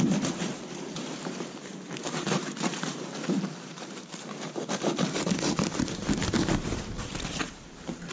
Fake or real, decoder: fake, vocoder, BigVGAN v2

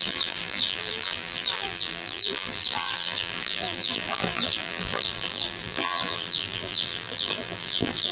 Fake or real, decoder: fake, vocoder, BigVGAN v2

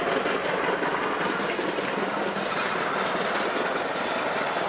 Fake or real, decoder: real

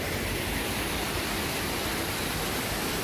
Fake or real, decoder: fake, vocoder, BigVGAN v2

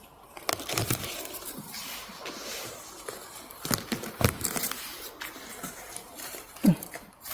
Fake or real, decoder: fake, vocoder, BigVGAN v2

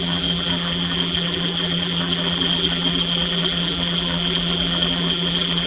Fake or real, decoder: fake, vocoder, BigVGAN v2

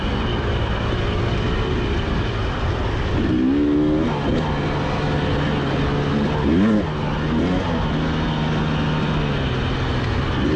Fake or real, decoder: real